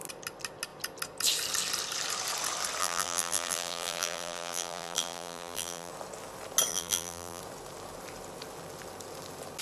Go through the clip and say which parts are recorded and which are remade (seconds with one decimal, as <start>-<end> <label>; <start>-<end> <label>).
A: 0.0-2.8 recorded; 2.8-5.9 remade; 5.9-6.7 recorded; 6.7-7.4 remade; 7.4-9.6 recorded